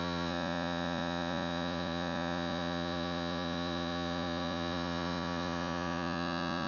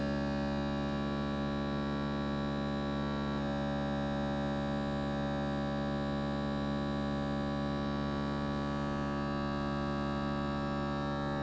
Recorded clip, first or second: second